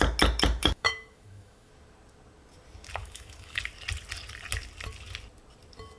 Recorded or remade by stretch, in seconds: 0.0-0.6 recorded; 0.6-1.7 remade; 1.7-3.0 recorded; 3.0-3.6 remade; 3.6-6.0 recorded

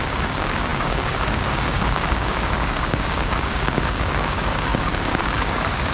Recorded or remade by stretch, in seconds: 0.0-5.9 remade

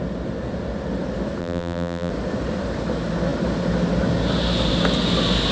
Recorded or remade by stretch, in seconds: 0.0-1.4 recorded; 1.4-2.1 remade; 2.1-5.5 recorded

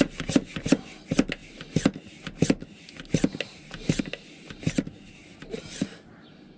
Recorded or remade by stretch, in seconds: 0.0-6.6 recorded

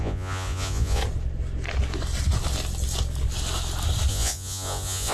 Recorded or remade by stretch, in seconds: 0.0-1.0 remade; 1.0-4.1 recorded; 4.1-5.1 remade